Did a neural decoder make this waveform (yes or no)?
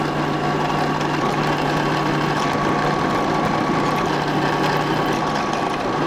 no